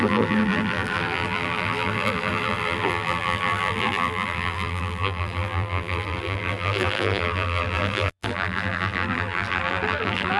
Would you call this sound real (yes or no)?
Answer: no